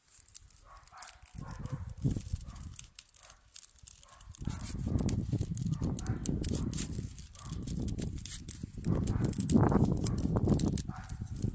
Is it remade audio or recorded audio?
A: recorded